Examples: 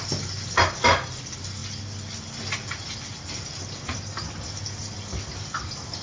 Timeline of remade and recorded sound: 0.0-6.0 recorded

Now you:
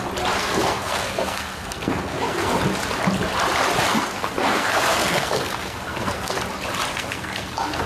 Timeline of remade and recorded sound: 0.0-0.4 recorded; 0.4-2.6 remade; 2.6-3.9 recorded; 3.9-6.4 remade; 6.4-6.9 recorded; 6.9-7.9 remade

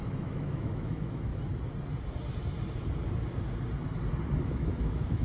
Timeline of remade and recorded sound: 0.0-1.3 remade; 1.3-4.4 recorded; 4.4-5.2 remade

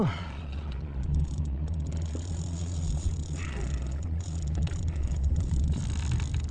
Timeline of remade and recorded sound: 0.0-5.8 remade; 5.8-6.5 recorded

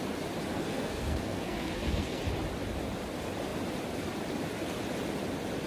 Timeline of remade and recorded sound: 0.0-0.5 recorded; 0.5-2.2 remade; 2.2-5.7 recorded

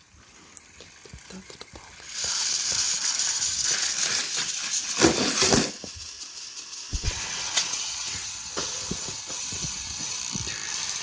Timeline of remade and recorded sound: 0.0-6.9 recorded; 6.9-10.2 remade; 10.2-11.0 recorded